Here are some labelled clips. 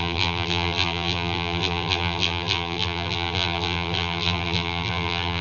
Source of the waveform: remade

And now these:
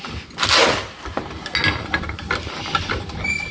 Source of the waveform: recorded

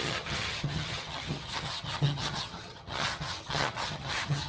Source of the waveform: remade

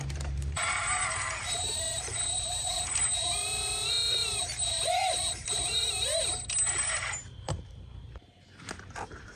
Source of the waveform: remade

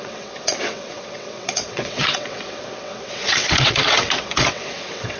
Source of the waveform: remade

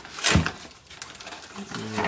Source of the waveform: recorded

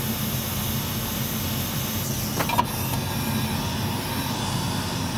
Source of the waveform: recorded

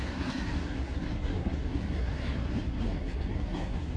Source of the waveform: remade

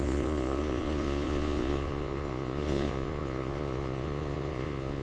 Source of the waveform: remade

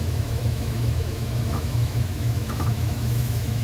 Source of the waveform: remade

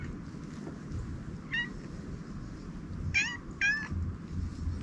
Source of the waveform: recorded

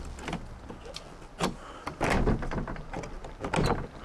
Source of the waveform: recorded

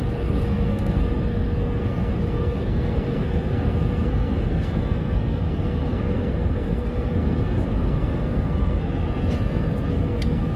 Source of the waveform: remade